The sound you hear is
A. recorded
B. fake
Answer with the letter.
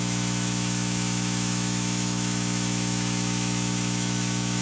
B